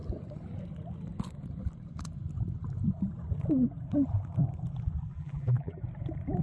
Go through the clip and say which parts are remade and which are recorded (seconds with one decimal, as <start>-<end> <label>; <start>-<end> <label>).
0.0-5.1 recorded; 5.1-5.8 remade; 5.8-6.4 recorded